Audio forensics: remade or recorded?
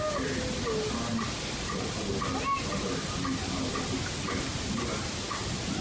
recorded